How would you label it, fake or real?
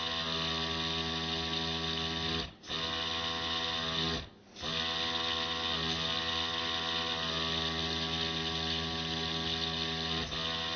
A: real